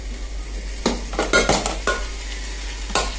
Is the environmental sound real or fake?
real